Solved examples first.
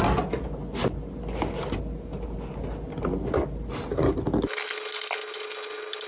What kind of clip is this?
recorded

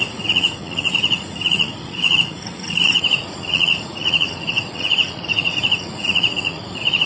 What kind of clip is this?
remade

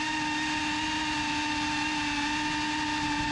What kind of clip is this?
recorded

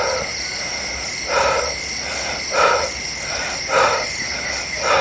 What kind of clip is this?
recorded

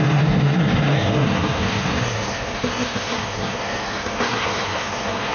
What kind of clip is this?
remade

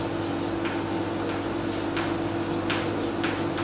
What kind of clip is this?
recorded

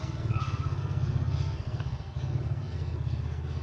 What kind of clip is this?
remade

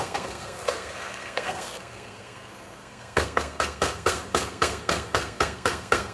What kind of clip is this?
remade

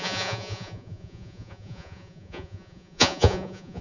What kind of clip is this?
remade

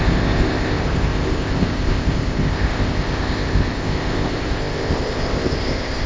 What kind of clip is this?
remade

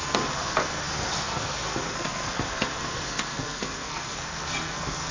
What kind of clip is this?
remade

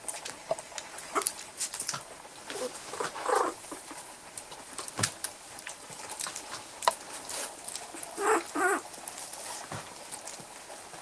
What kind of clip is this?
recorded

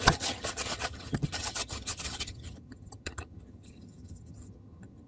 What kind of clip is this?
remade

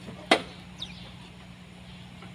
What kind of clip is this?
recorded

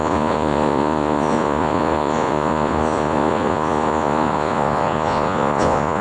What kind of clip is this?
remade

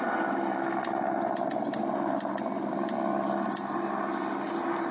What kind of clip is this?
recorded